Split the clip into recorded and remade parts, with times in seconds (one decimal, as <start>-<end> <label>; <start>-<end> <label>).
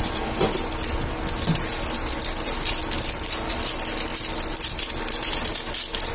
0.0-6.1 recorded